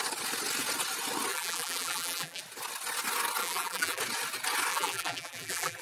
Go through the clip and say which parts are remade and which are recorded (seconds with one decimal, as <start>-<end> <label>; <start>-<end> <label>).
0.0-1.3 recorded; 1.3-2.4 remade; 2.4-3.4 recorded; 3.4-4.0 remade; 4.0-4.7 recorded; 4.7-5.8 remade